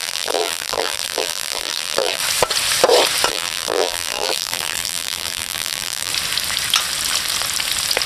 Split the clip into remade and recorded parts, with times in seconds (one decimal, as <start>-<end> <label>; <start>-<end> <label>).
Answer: 0.0-2.2 remade; 2.2-3.3 recorded; 3.3-6.1 remade; 6.1-8.1 recorded